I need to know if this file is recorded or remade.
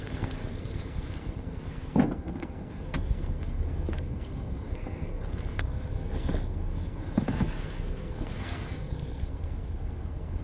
remade